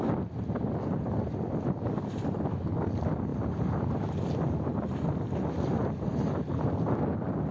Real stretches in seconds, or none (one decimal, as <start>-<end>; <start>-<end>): 0.0-7.5